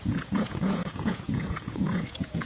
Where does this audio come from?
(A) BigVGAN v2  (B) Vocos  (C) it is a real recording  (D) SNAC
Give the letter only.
B